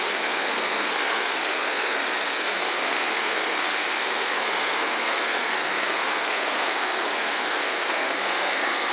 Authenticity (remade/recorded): remade